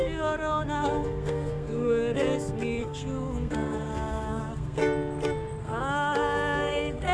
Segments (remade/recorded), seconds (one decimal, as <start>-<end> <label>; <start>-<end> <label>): 0.0-4.8 remade; 4.8-5.6 recorded; 5.6-7.1 remade